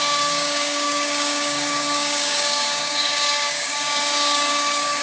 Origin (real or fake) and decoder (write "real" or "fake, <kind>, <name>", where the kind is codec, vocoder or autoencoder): fake, codec, DAC